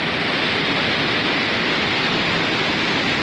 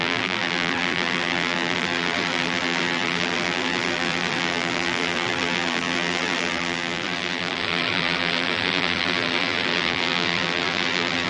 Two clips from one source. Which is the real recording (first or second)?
first